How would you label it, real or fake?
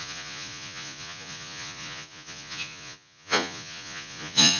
fake